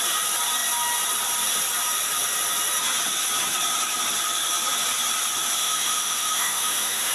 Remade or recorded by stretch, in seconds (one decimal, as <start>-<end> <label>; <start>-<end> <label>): 0.0-5.6 recorded; 5.6-7.1 remade